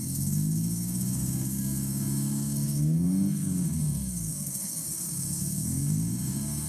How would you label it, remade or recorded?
remade